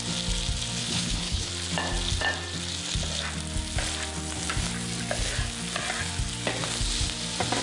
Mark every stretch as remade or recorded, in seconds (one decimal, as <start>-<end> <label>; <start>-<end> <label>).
0.0-0.8 recorded; 0.8-1.5 remade; 1.5-7.6 recorded